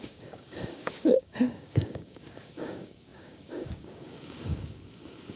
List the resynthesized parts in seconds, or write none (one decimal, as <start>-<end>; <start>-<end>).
0.0-5.4